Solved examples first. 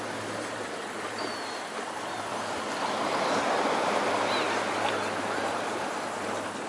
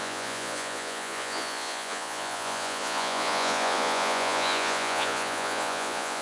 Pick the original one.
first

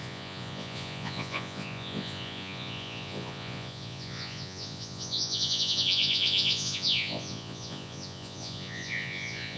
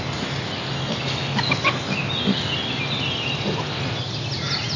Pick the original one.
second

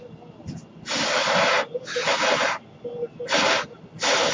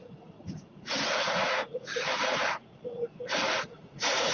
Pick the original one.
first